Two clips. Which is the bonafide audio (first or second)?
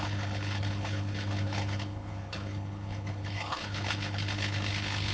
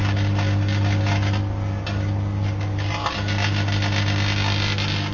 second